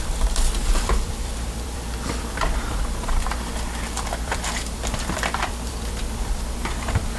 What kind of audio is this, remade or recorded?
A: remade